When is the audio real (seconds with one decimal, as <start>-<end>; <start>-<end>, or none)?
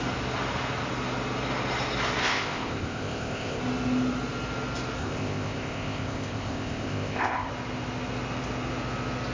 0.0-2.2; 3.6-5.0; 7.5-9.3